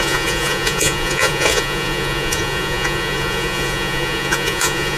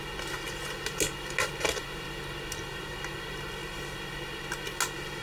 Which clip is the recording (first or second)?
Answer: second